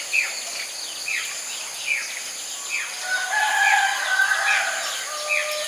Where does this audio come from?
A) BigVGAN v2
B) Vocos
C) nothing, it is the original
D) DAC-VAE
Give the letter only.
C